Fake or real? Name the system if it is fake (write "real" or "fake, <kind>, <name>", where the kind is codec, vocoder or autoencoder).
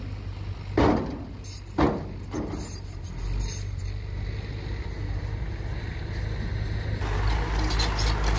real